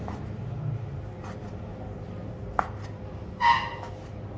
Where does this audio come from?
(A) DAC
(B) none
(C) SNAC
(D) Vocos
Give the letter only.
B